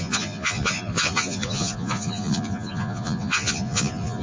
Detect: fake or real fake